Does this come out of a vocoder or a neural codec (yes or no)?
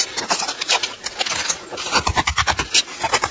no